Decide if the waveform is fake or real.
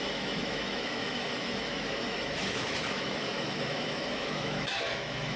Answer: fake